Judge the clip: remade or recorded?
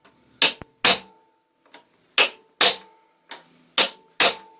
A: recorded